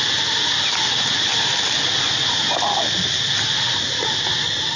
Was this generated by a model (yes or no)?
no